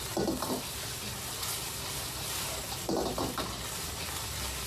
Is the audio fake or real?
real